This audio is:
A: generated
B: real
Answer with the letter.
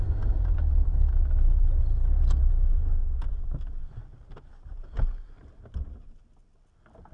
B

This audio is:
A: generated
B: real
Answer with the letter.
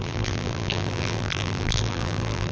A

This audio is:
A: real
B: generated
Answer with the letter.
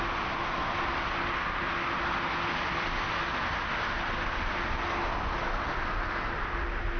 A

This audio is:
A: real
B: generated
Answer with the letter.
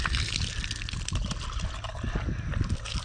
A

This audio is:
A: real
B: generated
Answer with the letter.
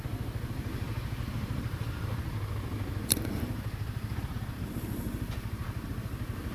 B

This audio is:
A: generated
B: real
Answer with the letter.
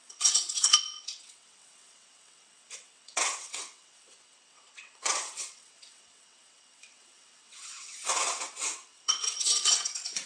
A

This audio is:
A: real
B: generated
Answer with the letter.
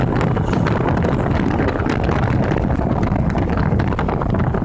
A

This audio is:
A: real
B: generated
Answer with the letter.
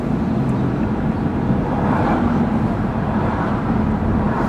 B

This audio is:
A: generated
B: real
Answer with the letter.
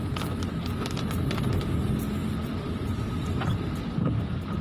B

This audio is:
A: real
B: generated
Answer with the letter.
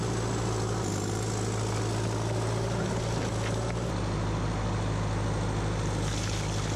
A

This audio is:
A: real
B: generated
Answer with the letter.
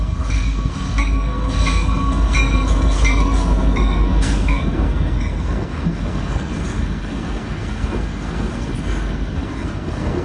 B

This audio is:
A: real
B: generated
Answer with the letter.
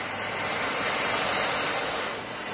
A